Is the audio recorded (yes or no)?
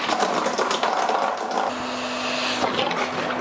yes